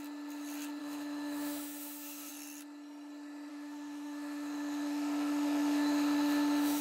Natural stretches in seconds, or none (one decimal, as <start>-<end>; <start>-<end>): 0.0-0.8; 2.3-3.5